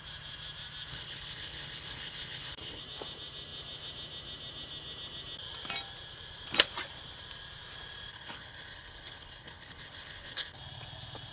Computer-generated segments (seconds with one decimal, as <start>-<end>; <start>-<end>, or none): 0.9-2.8; 8.1-10.6

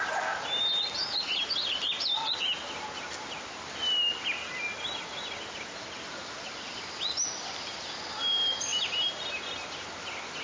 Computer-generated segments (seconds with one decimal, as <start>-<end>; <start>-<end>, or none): none

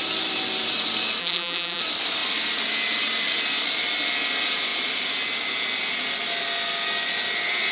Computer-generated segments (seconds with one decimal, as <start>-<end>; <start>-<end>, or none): 1.2-1.8

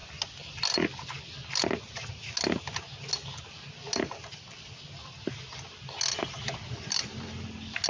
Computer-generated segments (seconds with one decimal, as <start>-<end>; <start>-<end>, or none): none

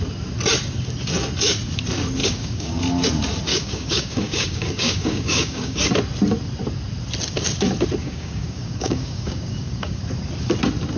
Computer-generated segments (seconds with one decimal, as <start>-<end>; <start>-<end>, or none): 2.2-2.8; 3.5-5.8; 8.0-10.0

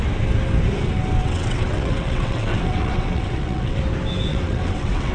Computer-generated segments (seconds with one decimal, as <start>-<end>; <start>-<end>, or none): 1.2-3.8; 4.3-5.1

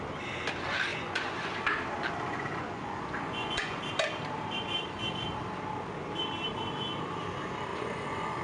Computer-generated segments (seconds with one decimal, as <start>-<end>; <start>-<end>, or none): 0.9-1.5; 2.3-3.8; 7.7-8.4

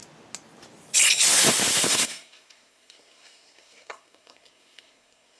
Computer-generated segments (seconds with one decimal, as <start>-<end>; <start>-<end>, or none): 1.9-5.4